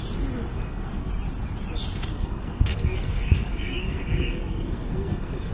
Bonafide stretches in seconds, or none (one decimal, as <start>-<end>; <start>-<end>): 0.0-0.5; 1.1-2.1